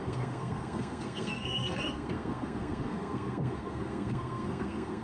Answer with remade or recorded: remade